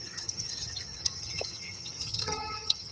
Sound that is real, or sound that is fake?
fake